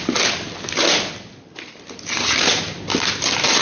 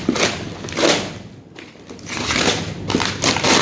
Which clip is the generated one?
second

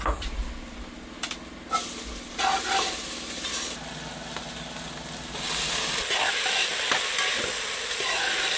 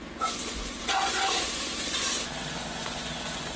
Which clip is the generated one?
second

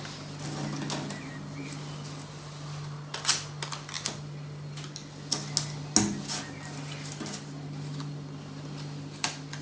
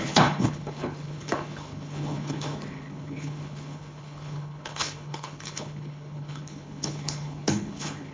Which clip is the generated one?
second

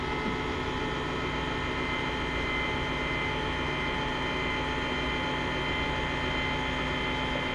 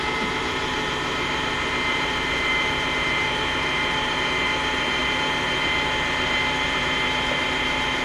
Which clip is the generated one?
second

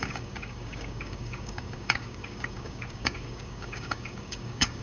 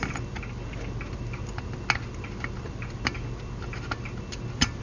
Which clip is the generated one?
first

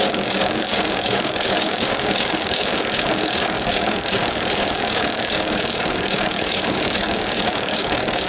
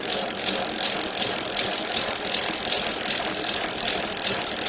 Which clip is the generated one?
first